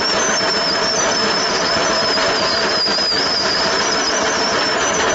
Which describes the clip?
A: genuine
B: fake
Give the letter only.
A